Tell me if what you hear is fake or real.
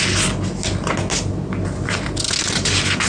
real